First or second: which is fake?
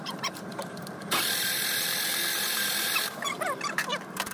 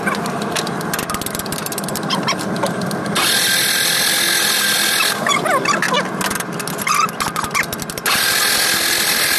first